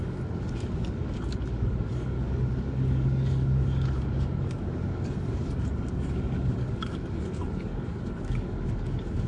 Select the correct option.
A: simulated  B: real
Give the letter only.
A